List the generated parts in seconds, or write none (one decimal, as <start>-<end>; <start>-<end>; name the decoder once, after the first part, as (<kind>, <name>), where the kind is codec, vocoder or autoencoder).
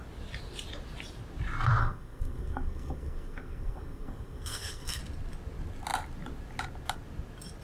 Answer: 1.8-5.0 (codec, SNAC)